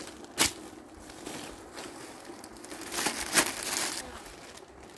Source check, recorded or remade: recorded